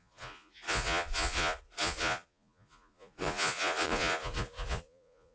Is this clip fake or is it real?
fake